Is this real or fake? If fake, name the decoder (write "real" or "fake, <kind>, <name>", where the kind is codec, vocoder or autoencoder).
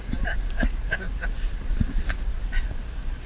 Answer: real